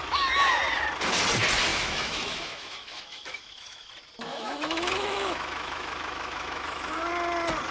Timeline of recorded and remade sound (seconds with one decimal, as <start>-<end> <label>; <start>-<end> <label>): 0.0-0.6 remade; 0.6-1.7 recorded; 1.7-3.9 remade; 3.9-4.3 recorded; 4.3-7.1 remade; 7.1-7.7 recorded